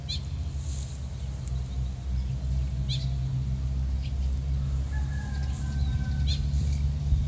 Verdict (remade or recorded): recorded